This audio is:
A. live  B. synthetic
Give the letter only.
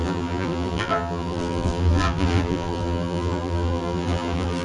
B